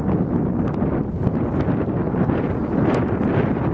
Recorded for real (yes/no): yes